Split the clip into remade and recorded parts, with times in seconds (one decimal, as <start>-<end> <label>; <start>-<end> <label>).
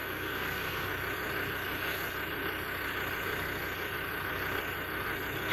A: 0.0-0.9 remade; 0.9-5.5 recorded